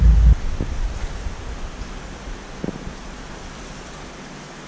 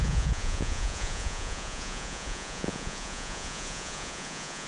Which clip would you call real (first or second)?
first